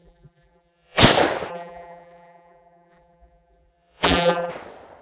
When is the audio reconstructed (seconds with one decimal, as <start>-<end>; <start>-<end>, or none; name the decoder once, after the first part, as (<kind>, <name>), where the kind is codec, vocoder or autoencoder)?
0.0-1.0 (vocoder, BigVGAN v2); 1.5-4.5